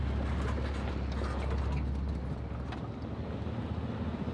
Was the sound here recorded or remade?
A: recorded